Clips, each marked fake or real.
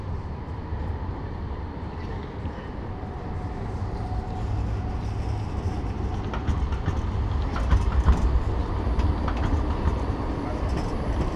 real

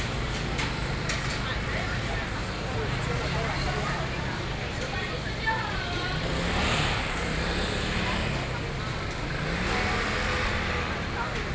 real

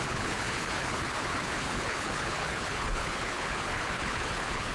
fake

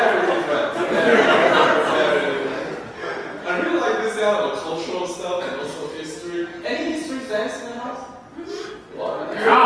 real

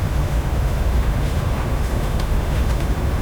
fake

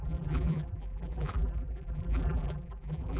fake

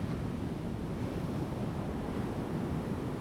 real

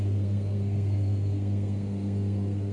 fake